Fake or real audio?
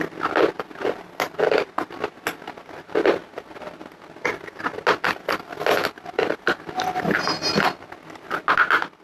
real